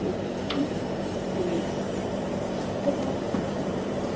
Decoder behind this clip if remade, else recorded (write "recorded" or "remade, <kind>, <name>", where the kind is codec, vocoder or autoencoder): remade, vocoder, BigVGAN v2